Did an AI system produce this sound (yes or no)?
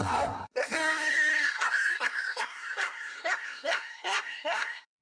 yes